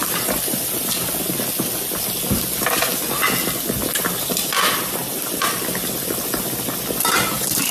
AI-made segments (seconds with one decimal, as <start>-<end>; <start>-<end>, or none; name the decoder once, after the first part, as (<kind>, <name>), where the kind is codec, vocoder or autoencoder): 0.0-2.4 (vocoder, BigVGAN v2)